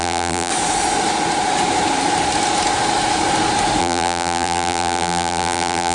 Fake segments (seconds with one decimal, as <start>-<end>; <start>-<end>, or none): 0.0-0.5; 3.8-5.9

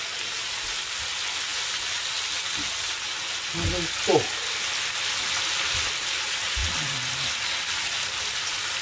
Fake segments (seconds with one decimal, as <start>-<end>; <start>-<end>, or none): none

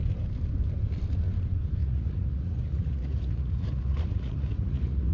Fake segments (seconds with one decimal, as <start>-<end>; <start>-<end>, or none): 1.8-5.1

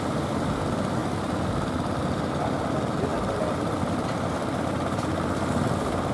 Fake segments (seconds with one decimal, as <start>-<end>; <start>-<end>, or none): none